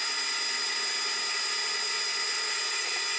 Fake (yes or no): no